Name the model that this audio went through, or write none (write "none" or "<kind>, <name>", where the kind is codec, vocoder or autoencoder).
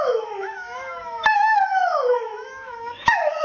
autoencoder, DAC-VAE